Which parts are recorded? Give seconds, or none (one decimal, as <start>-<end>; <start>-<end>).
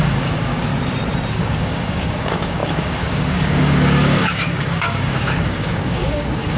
0.7-1.3